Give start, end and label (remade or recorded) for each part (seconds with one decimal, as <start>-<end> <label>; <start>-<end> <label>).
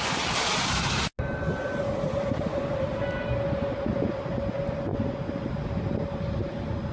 0.0-6.9 recorded